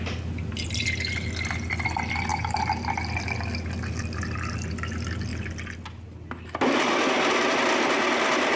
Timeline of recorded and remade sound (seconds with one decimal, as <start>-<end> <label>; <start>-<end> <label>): 0.0-8.6 recorded